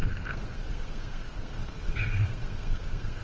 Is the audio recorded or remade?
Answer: remade